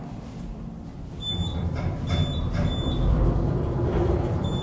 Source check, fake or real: fake